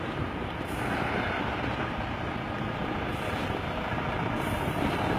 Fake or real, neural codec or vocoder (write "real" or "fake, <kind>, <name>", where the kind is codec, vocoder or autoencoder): real